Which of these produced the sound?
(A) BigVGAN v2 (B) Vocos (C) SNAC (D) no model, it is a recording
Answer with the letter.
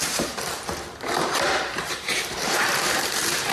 A